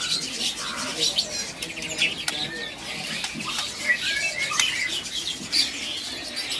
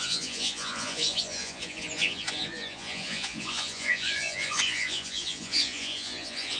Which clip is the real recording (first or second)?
first